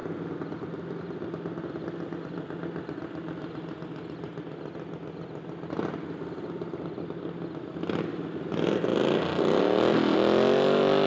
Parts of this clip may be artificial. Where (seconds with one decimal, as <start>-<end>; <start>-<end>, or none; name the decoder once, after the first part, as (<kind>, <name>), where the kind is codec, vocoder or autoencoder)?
none